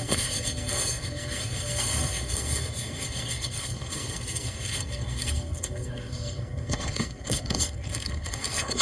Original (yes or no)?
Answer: no